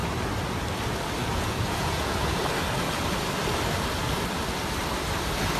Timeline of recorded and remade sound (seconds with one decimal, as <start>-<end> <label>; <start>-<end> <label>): 0.0-1.3 recorded; 1.3-2.4 remade; 2.4-5.6 recorded